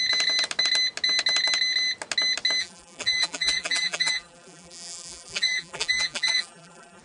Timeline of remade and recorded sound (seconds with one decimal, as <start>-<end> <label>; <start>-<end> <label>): 0.0-2.6 recorded; 2.6-7.0 remade